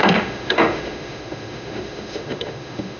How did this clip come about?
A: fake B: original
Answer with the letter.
A